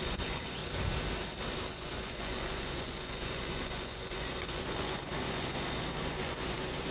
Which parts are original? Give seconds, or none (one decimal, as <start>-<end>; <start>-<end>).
0.6-1.7